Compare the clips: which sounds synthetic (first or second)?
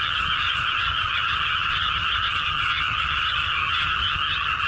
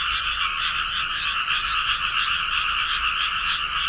first